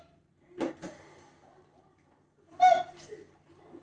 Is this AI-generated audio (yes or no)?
no